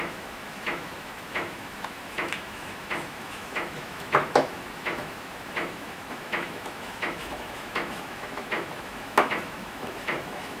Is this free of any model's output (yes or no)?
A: no